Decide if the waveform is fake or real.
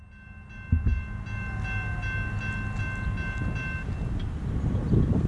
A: real